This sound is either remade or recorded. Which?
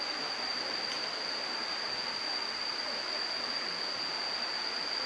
recorded